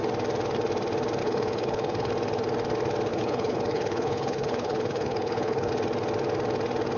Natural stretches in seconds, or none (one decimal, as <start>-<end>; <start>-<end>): 0.0-1.2; 2.1-3.1; 5.7-7.0